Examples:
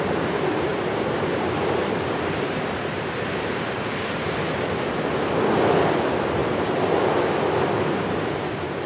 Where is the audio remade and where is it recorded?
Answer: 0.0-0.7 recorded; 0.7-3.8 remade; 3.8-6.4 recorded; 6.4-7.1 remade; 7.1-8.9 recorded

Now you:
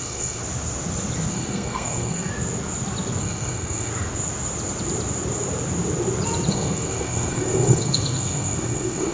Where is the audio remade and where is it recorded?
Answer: 0.0-0.4 remade; 0.4-1.3 recorded; 1.3-2.3 remade; 2.3-3.2 recorded; 3.2-3.9 remade; 3.9-6.5 recorded; 6.5-9.1 remade

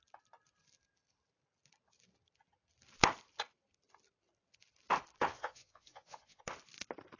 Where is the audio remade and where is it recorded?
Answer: 0.0-5.3 recorded; 5.3-6.4 remade; 6.4-7.2 recorded

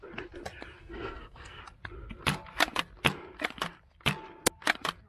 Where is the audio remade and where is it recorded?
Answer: 0.0-0.8 recorded; 0.8-1.6 remade; 1.6-5.1 recorded

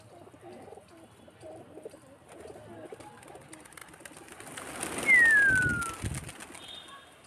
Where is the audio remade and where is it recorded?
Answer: 0.0-7.3 recorded

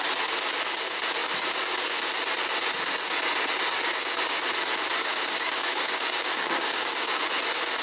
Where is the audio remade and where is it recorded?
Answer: 0.0-5.0 recorded; 5.0-7.2 remade; 7.2-7.8 recorded

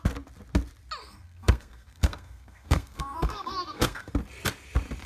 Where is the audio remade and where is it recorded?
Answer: 0.0-1.0 recorded; 1.0-4.1 remade; 4.1-5.1 recorded